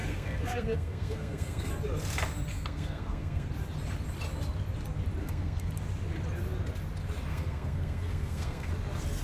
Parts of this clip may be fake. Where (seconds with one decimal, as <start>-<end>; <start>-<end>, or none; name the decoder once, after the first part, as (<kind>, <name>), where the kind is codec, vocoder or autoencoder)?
0.0-1.7 (codec, SNAC); 2.5-3.5; 5.2-5.7; 7.3-8.7